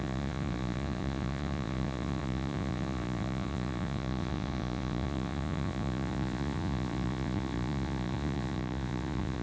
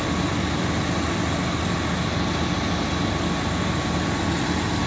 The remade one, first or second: first